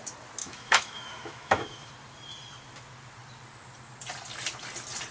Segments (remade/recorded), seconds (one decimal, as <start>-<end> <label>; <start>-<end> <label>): 0.0-0.4 recorded; 0.4-1.9 remade; 1.9-5.1 recorded